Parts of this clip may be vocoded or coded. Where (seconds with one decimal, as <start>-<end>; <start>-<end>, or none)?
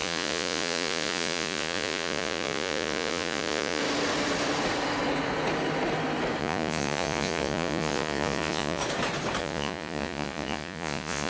0.0-3.8; 6.4-8.8; 9.4-11.3